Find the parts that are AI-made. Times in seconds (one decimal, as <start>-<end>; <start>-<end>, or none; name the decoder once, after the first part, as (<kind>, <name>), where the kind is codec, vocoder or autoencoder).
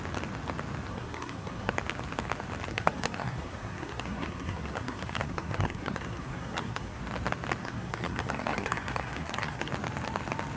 0.9-1.7 (codec, SNAC); 2.7-7.0; 7.6-9.7